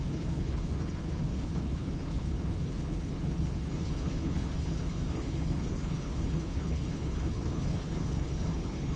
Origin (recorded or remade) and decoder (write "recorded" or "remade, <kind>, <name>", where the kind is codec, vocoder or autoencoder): remade, codec, HILCodec